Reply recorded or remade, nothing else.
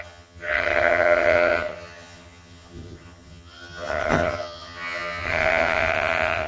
remade